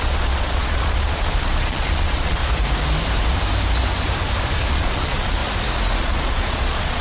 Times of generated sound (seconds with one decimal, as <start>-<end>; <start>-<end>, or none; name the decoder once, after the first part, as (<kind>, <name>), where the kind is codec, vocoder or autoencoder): 0.0-2.4 (vocoder, Vocos); 4.7-5.4; 6.0-7.0